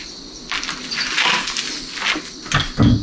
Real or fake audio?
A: real